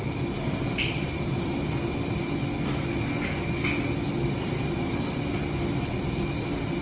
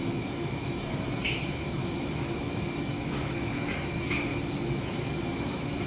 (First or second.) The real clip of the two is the first